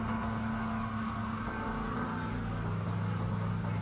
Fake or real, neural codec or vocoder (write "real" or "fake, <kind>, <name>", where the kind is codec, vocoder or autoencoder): real